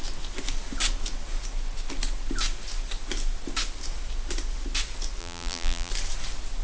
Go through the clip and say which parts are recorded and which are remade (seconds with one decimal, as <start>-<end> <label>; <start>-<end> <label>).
0.0-5.2 recorded; 5.2-5.9 remade; 5.9-6.6 recorded

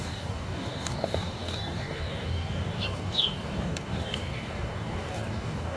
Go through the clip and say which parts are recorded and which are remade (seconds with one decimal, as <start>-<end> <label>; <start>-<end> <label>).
0.0-5.8 remade

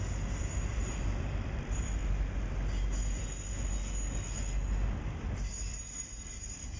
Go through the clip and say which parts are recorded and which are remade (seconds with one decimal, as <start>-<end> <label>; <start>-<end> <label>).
0.0-2.0 remade; 2.0-5.0 recorded; 5.0-6.8 remade

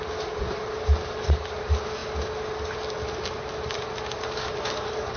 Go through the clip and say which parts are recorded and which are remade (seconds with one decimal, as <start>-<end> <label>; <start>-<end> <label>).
0.0-5.2 recorded

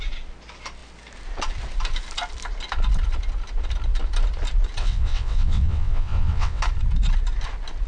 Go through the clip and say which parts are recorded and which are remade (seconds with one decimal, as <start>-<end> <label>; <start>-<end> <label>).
0.0-4.8 recorded; 4.8-6.6 remade; 6.6-7.9 recorded